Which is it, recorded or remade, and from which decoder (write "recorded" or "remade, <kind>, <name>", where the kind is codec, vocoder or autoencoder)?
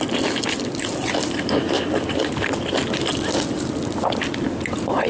recorded